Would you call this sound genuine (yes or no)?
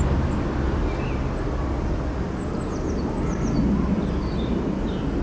yes